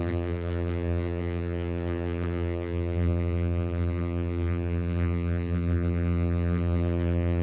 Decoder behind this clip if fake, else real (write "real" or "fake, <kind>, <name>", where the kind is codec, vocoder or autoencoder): fake, vocoder, BigVGAN v2